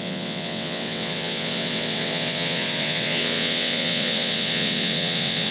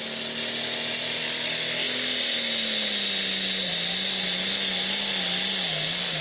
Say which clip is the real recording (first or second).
second